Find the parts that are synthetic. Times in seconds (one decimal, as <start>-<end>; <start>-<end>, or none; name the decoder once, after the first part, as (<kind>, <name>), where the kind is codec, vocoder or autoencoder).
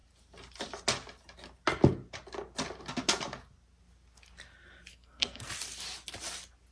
4.9-5.5 (codec, SNAC)